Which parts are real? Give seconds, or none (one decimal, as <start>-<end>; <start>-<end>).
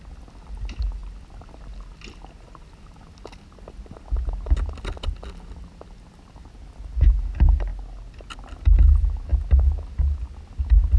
0.0-11.0